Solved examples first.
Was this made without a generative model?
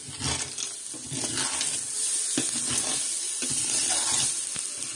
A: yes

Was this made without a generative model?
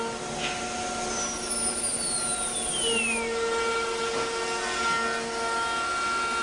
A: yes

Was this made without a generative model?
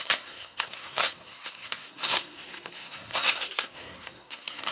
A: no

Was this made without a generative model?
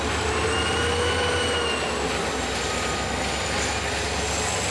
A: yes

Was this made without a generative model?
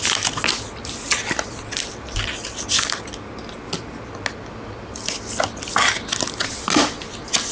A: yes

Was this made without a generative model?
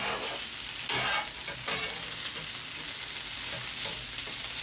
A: yes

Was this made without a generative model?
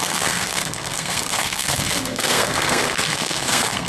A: no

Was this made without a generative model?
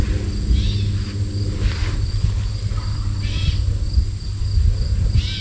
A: yes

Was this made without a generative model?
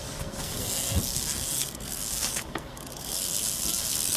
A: no